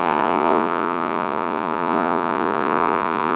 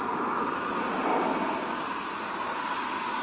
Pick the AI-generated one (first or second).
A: first